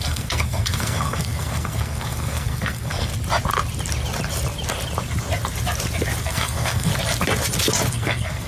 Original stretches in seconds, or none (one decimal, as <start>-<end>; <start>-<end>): 3.1-6.2; 6.9-7.9